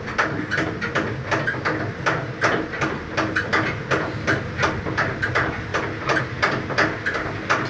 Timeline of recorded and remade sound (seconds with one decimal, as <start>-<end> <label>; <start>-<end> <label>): 0.0-5.7 recorded; 5.7-6.2 remade; 6.2-7.7 recorded